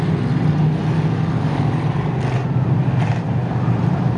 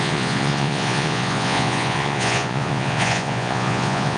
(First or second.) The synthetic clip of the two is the second